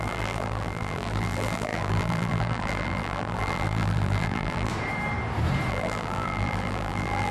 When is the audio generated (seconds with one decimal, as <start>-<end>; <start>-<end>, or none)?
0.0-4.7; 5.7-7.3